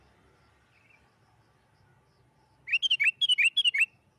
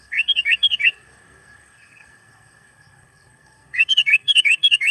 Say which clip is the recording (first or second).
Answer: first